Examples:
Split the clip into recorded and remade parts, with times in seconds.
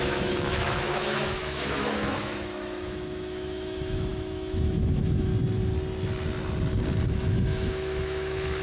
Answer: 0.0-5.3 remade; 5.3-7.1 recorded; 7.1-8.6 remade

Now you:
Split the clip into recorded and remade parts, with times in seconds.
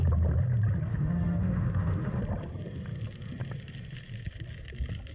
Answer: 0.0-0.9 recorded; 0.9-2.2 remade; 2.2-5.1 recorded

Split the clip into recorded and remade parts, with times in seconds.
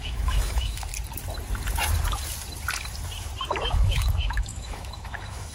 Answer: 0.0-0.9 remade; 0.9-3.5 recorded; 3.5-5.5 remade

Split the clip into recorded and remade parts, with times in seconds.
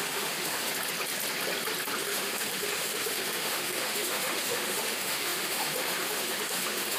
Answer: 0.0-0.7 remade; 0.7-2.0 recorded; 2.0-7.0 remade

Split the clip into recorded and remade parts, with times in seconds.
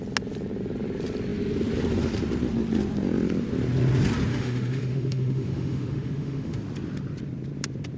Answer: 0.0-4.3 recorded; 4.3-6.6 remade; 6.6-8.0 recorded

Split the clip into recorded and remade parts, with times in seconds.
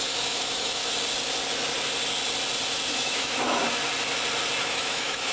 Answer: 0.0-0.8 remade; 0.8-2.9 recorded; 2.9-3.6 remade; 3.6-4.6 recorded; 4.6-5.3 remade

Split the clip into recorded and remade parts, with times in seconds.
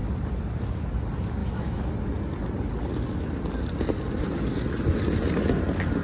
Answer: 0.0-1.4 recorded; 1.4-1.9 remade; 1.9-6.0 recorded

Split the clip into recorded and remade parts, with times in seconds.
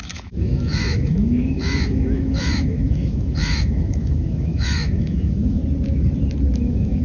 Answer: 0.0-5.6 remade; 5.6-6.6 recorded; 6.6-7.0 remade